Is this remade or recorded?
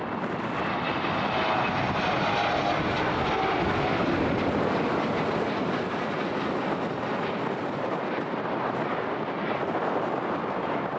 recorded